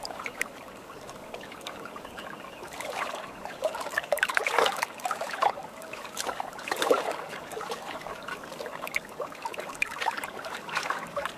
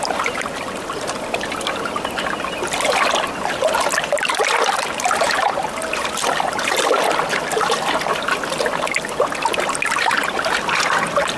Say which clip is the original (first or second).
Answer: second